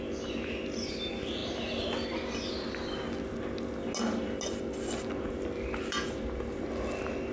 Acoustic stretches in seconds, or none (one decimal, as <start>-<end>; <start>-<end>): 0.0-7.3